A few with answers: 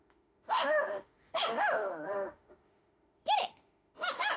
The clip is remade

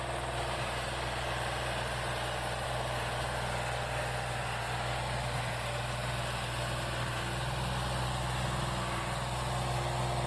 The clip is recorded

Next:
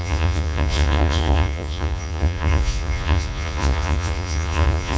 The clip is remade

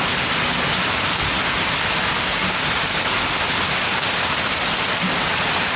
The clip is recorded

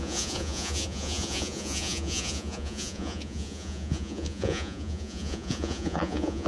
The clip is remade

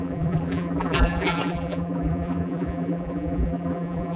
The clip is remade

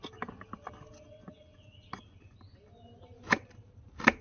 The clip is recorded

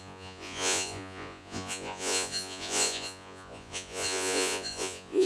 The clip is remade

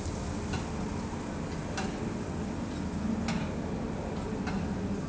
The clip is recorded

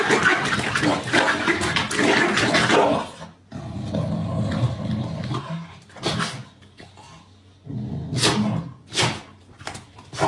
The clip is recorded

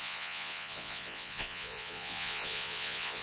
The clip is remade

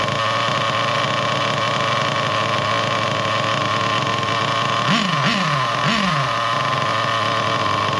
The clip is recorded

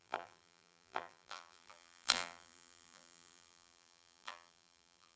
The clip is remade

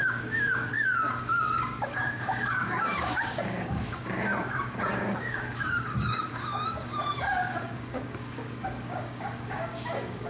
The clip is remade